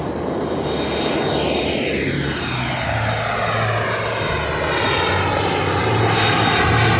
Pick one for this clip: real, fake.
real